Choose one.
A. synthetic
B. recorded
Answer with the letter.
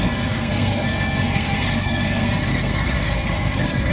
A